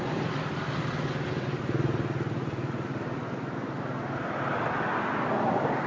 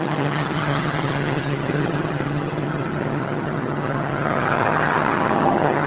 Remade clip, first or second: second